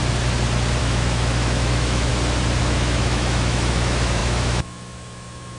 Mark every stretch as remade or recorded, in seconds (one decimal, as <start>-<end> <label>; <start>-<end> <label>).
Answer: 0.0-0.8 recorded; 0.8-2.1 remade; 2.1-2.6 recorded; 2.6-5.6 remade